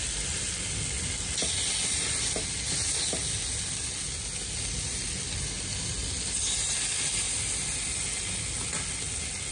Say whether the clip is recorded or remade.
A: recorded